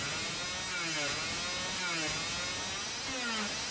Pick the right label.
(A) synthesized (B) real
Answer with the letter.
B